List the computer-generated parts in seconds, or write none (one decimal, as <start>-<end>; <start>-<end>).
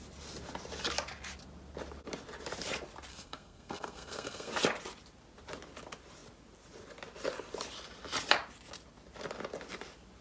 3.1-4.5